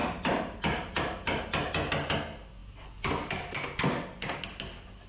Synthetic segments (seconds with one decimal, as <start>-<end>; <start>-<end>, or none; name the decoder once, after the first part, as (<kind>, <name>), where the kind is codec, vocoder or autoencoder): none